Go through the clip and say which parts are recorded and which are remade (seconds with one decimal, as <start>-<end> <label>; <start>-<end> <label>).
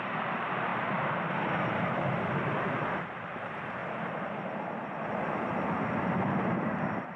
0.0-3.8 remade; 3.8-5.9 recorded; 5.9-7.2 remade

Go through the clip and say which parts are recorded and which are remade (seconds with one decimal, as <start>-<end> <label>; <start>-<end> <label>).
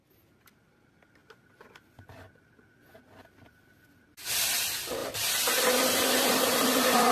0.0-5.0 recorded; 5.0-7.1 remade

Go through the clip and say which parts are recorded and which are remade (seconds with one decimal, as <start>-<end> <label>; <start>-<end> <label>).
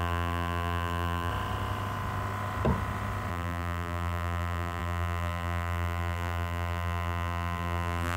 0.0-1.3 remade; 1.3-3.3 recorded; 3.3-8.2 remade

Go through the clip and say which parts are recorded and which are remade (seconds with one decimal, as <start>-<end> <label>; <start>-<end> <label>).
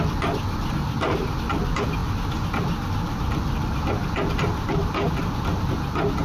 0.0-6.2 recorded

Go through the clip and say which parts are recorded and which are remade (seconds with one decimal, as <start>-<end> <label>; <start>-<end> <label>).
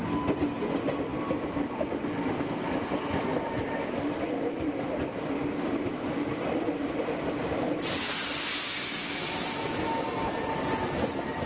0.0-1.1 recorded; 1.1-1.9 remade; 1.9-7.4 recorded; 7.4-7.9 remade; 7.9-11.5 recorded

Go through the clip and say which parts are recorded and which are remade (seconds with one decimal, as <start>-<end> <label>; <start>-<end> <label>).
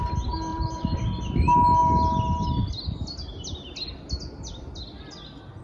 0.0-0.5 recorded; 0.5-1.2 remade; 1.2-5.6 recorded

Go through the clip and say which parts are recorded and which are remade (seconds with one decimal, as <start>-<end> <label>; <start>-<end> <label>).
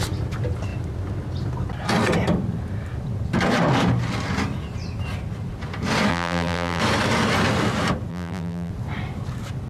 0.0-6.1 recorded; 6.1-6.8 remade; 6.8-8.1 recorded; 8.1-8.7 remade; 8.7-9.7 recorded